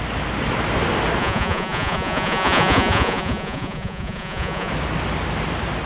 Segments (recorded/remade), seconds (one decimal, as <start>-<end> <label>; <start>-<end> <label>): 0.0-1.2 recorded; 1.2-4.7 remade; 4.7-5.9 recorded